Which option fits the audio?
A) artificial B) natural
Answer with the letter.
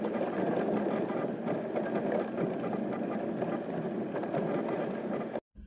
B